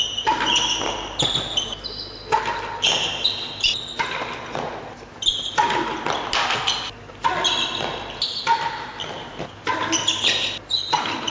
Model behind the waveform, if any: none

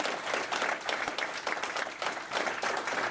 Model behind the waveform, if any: none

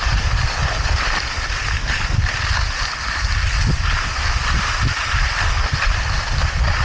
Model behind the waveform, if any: none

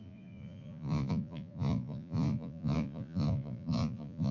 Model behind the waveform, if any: vocoder, Vocos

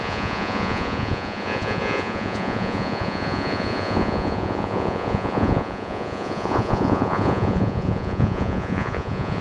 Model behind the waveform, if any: vocoder, Vocos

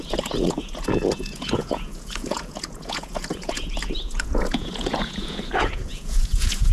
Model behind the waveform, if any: vocoder, Vocos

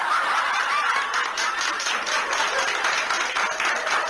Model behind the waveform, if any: none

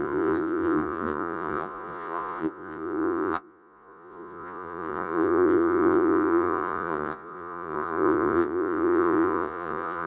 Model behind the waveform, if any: vocoder, Vocos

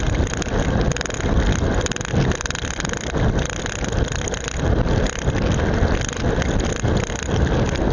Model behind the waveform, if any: none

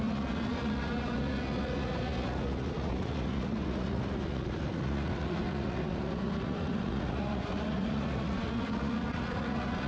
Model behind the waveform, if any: vocoder, Vocos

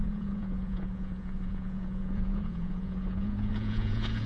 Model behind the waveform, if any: vocoder, Vocos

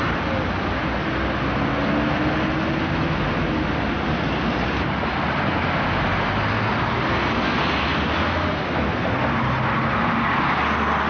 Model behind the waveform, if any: none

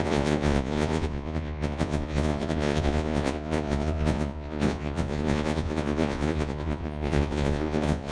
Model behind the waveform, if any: vocoder, Vocos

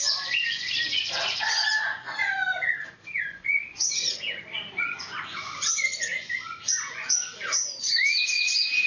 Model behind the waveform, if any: vocoder, Vocos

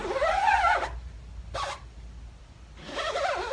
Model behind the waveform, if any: none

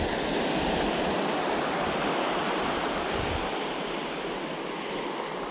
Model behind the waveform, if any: none